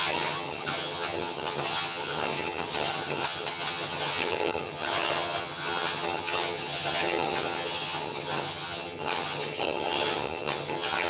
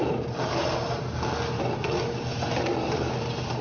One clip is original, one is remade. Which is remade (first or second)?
first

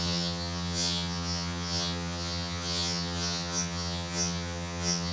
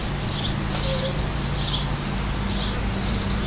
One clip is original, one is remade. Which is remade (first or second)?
first